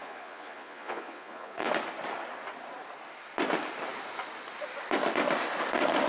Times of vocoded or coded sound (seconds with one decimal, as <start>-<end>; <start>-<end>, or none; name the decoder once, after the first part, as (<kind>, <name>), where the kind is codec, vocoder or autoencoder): 0.0-1.7 (vocoder, Vocos)